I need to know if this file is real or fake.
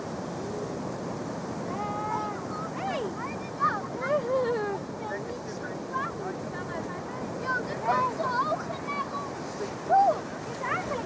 real